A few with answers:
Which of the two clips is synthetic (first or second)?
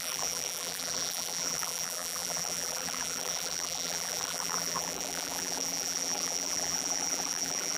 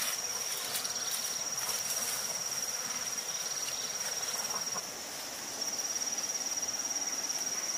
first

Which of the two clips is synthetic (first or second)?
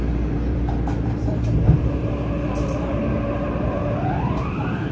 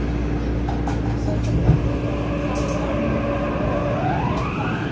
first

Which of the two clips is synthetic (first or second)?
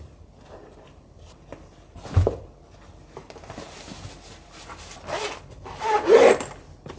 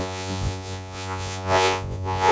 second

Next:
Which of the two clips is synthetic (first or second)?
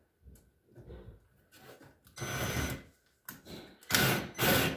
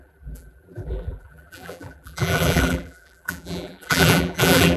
second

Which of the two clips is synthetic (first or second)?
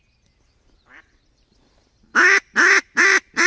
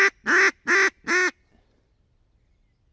first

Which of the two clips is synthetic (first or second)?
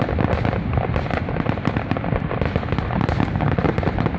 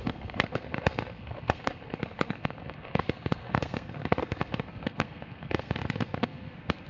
second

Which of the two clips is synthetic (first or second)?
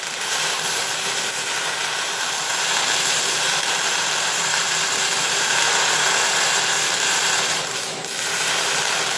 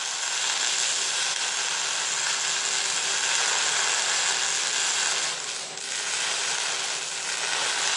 first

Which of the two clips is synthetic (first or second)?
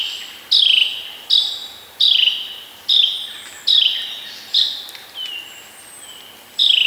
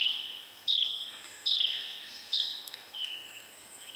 second